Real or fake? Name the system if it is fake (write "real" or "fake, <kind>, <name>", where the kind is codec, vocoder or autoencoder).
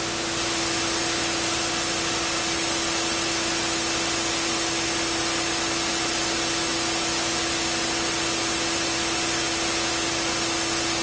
real